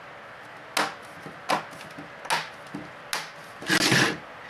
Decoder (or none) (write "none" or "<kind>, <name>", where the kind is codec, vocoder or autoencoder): none